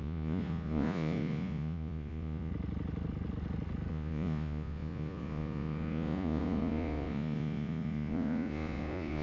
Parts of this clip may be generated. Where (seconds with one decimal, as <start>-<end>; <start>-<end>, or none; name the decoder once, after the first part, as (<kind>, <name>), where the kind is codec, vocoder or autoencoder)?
0.0-2.5 (vocoder, Vocos); 3.9-9.2